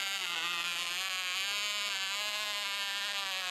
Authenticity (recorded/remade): recorded